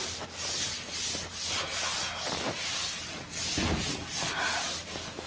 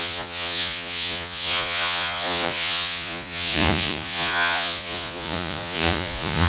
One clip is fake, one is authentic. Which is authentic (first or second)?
first